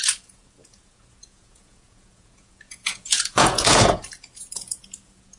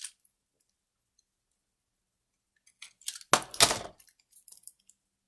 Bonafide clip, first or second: second